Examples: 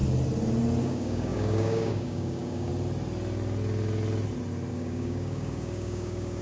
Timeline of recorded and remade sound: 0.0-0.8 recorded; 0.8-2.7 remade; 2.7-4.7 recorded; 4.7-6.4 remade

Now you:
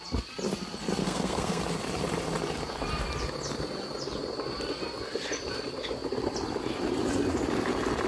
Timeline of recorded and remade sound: 0.0-1.0 recorded; 1.0-1.6 remade; 1.6-8.1 recorded

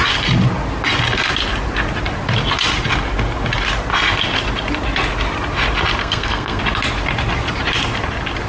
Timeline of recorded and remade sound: 0.0-6.0 recorded; 6.0-6.6 remade; 6.6-8.5 recorded

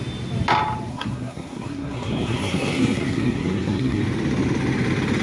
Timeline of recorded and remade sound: 0.0-0.9 recorded; 0.9-4.0 remade; 4.0-5.2 recorded

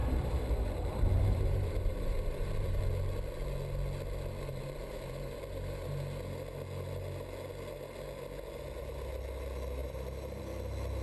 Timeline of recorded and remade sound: 0.0-2.8 remade; 2.8-4.5 recorded; 4.5-5.9 remade; 5.9-9.8 recorded; 9.8-10.4 remade; 10.4-11.0 recorded

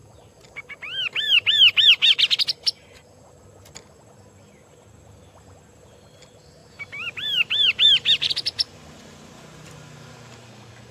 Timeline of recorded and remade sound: 0.0-1.9 remade; 1.9-6.6 recorded; 6.6-8.3 remade; 8.3-10.9 recorded

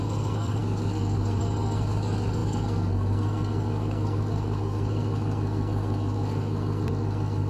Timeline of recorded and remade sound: 0.0-7.5 remade